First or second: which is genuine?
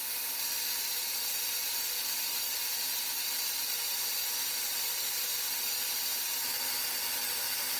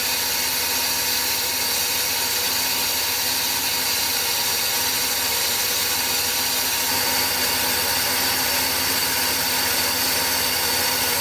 second